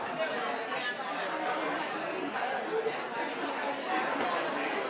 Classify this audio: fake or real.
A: real